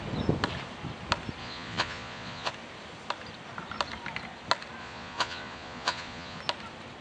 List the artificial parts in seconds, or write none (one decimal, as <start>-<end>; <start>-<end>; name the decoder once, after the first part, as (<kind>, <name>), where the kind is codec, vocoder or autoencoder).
1.4-2.5 (vocoder, Vocos); 4.8-6.4